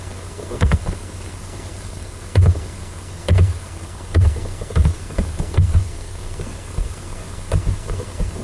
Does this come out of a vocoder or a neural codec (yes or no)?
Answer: yes